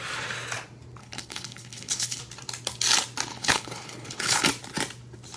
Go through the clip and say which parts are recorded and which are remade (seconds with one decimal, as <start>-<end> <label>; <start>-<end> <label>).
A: 0.0-1.0 recorded; 1.0-2.2 remade; 2.2-3.3 recorded; 3.3-4.4 remade; 4.4-5.4 recorded